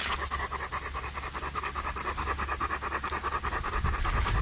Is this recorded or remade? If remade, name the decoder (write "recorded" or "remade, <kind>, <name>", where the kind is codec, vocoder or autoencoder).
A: recorded